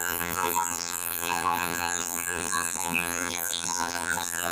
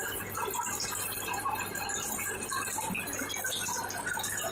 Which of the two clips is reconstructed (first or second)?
first